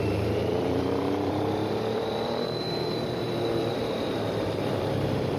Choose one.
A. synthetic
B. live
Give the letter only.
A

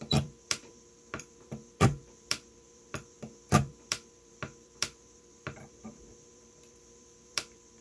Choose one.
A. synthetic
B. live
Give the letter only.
A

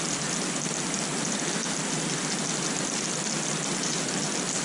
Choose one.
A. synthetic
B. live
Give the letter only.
B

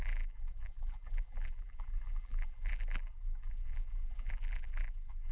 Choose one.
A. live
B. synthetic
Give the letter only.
B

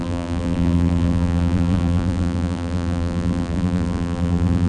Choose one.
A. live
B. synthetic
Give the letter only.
B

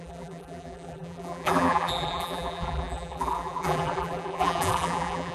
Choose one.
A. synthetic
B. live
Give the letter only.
A